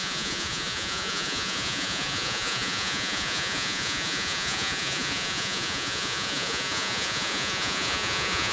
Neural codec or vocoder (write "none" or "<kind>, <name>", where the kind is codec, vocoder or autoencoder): vocoder, Vocos